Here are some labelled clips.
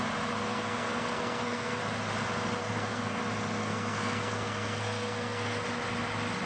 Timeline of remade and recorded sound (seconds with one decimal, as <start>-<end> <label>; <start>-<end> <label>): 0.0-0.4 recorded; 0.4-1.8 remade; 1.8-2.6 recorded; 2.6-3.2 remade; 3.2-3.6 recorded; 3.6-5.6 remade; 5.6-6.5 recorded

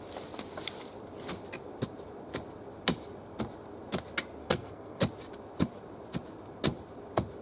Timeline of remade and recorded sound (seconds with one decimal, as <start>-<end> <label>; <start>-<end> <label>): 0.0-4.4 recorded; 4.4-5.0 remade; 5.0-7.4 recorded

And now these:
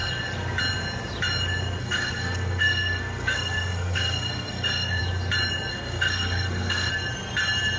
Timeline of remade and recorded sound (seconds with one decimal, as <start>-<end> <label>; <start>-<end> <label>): 0.0-1.8 recorded; 1.8-5.0 remade; 5.0-5.7 recorded; 5.7-6.9 remade; 6.9-7.8 recorded

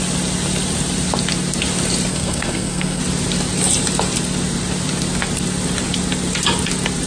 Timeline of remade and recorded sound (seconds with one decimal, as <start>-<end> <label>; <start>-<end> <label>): 0.0-2.1 recorded; 2.1-3.0 remade; 3.0-7.1 recorded

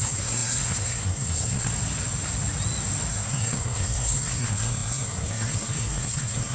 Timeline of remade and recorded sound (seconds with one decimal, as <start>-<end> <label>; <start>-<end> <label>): 0.0-1.7 remade; 1.7-3.1 recorded; 3.1-6.5 remade